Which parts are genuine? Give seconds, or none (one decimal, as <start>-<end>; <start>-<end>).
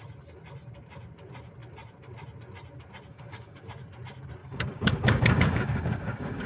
0.0-3.1; 3.6-4.4